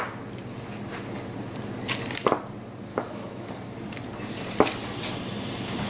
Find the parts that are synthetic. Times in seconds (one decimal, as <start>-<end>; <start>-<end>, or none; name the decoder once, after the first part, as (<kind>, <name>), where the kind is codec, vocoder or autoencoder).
2.9-3.5 (autoencoder, DAC-VAE)